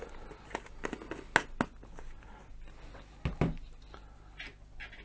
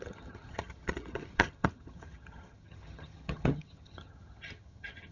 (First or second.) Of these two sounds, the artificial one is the second